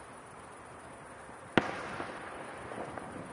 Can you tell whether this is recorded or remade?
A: recorded